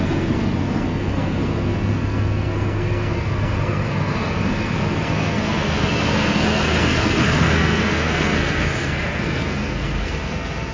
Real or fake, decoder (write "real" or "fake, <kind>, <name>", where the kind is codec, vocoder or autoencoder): fake, codec, SNAC